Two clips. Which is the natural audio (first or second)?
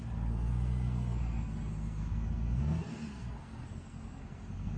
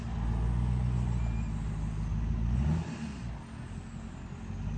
second